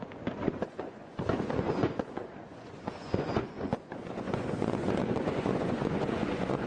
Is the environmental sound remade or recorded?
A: remade